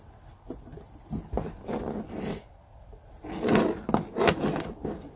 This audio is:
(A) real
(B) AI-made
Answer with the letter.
A